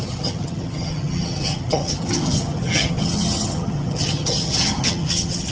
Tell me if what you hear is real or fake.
fake